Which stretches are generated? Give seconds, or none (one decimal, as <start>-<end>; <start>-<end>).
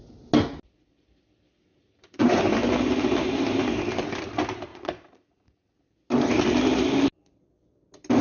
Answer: 1.7-2.4; 4.7-5.7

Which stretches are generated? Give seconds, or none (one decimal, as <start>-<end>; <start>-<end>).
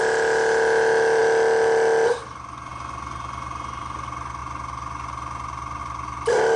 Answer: none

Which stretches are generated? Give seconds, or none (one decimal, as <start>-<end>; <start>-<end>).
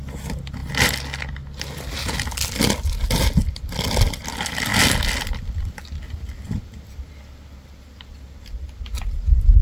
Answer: none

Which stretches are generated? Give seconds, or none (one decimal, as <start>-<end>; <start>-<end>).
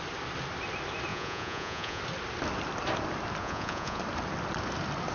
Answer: 1.1-2.0; 3.4-4.0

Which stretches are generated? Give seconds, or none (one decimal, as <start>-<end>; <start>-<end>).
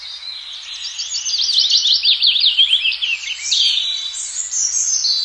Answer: none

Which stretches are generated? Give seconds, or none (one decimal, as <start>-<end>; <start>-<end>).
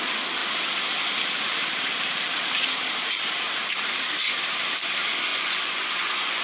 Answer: 5.3-6.4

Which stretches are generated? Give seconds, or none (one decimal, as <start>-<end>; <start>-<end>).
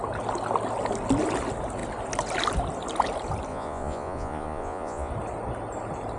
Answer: 3.5-5.1